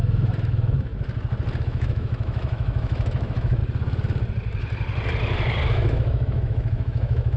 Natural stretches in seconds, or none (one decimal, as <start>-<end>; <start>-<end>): 0.9-1.6; 3.6-5.7